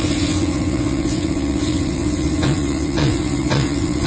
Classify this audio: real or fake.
fake